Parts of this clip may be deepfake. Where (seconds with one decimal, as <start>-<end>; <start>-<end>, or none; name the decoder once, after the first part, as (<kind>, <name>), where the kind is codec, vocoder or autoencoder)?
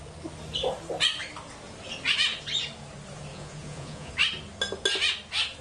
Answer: 3.3-4.1 (vocoder, Vocos)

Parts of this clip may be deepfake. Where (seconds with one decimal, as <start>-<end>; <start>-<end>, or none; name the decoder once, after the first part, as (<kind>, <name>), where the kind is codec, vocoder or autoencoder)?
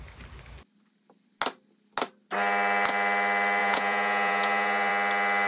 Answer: 3.6-4.9 (vocoder, Vocos)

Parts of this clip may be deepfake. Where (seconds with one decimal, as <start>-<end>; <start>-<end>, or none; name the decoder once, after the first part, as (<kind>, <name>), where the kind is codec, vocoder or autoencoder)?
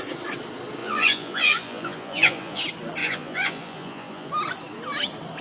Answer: 0.8-2.6 (vocoder, Vocos); 3.0-4.3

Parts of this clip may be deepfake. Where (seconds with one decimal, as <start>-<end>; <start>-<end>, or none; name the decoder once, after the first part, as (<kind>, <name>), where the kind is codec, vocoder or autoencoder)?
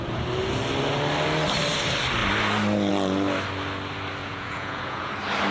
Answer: 4.2-5.1 (vocoder, Vocos)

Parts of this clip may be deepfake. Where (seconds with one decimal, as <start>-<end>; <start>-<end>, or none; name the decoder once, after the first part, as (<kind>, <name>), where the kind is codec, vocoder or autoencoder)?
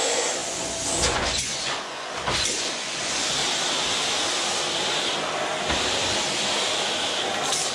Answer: 0.0-3.4 (vocoder, Vocos)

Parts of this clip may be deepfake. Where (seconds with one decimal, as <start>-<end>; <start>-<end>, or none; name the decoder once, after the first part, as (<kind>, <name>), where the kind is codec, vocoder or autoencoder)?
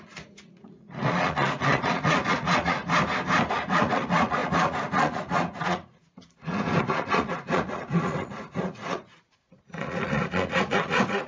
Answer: 0.0-2.8 (vocoder, Vocos); 3.5-11.3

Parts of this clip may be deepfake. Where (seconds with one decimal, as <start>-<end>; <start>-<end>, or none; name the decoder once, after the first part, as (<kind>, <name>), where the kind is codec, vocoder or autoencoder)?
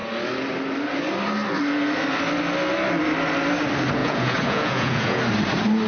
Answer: 4.0-5.2 (vocoder, Vocos)